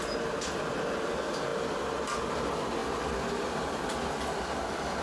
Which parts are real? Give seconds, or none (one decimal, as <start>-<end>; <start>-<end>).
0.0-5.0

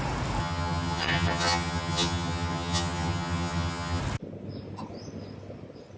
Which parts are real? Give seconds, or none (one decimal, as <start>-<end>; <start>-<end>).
0.0-0.4; 4.0-6.0

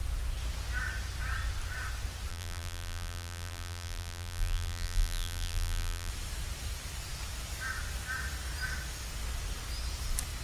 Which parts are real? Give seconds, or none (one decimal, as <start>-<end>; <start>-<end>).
0.0-2.3; 6.1-10.4

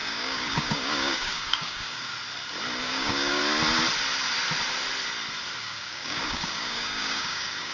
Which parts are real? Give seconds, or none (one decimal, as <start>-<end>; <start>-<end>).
2.1-2.8; 3.4-5.6

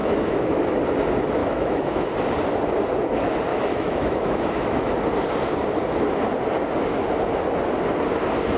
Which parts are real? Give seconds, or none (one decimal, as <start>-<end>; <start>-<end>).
0.5-1.4; 2.1-3.5; 4.8-8.6

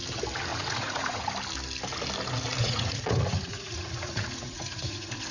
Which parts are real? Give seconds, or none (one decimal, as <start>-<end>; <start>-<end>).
0.0-0.5; 1.3-2.6

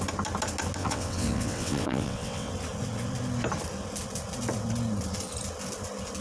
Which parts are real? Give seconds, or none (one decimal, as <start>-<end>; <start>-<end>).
0.0-0.8; 2.5-6.2